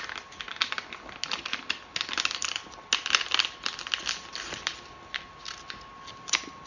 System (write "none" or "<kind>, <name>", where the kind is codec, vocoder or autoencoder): none